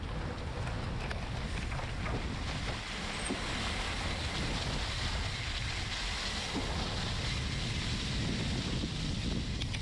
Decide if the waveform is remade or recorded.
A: recorded